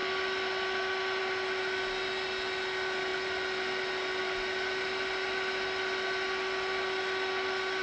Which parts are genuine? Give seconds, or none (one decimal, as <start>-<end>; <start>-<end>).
0.0-7.8